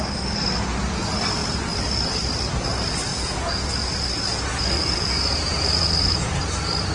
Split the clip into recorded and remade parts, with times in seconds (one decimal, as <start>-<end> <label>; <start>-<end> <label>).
0.0-3.1 recorded; 3.1-3.7 remade; 3.7-4.3 recorded; 4.3-6.4 remade; 6.4-6.9 recorded